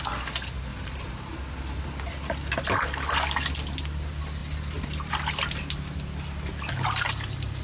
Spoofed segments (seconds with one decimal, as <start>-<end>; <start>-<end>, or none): 0.7-1.3; 4.4-5.1